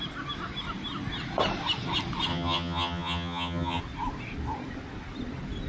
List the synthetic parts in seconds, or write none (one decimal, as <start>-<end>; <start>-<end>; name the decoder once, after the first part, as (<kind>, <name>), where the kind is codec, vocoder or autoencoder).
2.3-3.8 (vocoder, HiFi-GAN)